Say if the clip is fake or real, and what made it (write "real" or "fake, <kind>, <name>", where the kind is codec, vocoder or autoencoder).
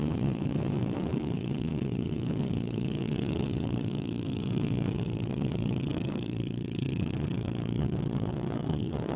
fake, vocoder, WaveNeXt